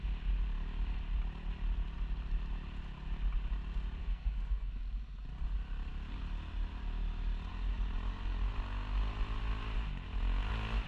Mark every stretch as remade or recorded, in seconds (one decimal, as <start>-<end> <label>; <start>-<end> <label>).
0.0-4.0 recorded; 4.0-4.7 remade; 4.7-10.9 recorded